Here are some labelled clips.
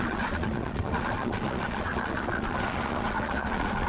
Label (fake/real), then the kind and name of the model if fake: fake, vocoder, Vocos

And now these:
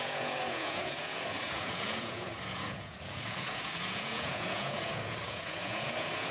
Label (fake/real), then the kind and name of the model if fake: fake, vocoder, Vocos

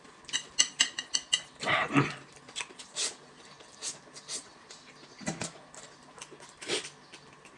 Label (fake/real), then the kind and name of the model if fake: real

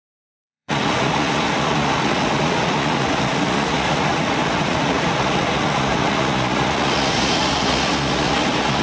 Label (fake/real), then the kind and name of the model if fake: fake, vocoder, Vocos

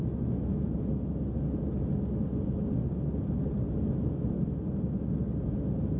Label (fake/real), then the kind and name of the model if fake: real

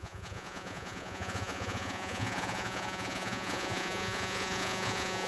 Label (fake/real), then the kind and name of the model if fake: fake, vocoder, Vocos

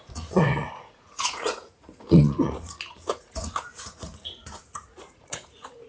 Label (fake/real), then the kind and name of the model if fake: fake, vocoder, Vocos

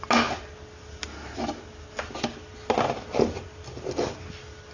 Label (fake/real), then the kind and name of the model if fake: real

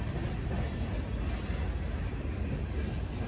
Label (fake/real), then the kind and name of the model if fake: real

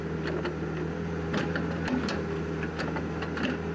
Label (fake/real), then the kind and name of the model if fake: real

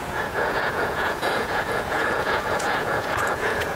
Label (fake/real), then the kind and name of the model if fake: fake, vocoder, Vocos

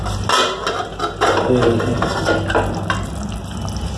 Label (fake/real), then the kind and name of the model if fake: real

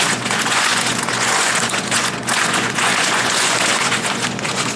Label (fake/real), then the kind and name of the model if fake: fake, vocoder, Vocos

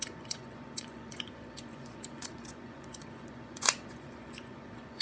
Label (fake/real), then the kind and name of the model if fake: fake, vocoder, Vocos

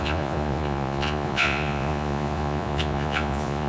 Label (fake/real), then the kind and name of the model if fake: fake, vocoder, Vocos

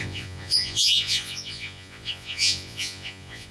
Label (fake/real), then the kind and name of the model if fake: fake, vocoder, Vocos